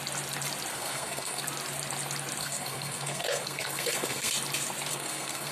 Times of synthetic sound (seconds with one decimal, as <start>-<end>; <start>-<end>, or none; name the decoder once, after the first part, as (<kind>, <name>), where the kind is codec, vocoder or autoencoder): 0.7-1.4 (codec, SNAC); 2.4-4.3; 4.9-5.5

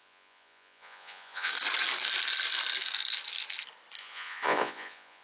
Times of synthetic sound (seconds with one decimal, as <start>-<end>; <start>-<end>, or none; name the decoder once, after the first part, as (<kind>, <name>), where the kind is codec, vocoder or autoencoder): 0.0-1.5 (vocoder, Vocos); 4.0-5.2

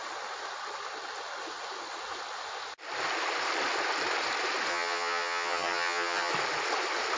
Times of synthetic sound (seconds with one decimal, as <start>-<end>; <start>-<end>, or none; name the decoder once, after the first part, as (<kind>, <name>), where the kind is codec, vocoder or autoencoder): 4.7-6.3 (vocoder, HiFi-GAN)